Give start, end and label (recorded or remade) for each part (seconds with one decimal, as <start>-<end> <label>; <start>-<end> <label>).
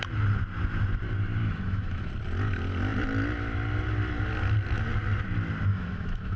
0.0-1.4 recorded; 1.4-2.1 remade; 2.1-5.7 recorded; 5.7-6.4 remade